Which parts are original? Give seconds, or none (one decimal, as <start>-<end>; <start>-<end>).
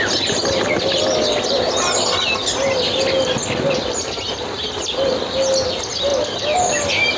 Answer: 0.0-7.2